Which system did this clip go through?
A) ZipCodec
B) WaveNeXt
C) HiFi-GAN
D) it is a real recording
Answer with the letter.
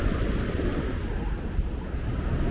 D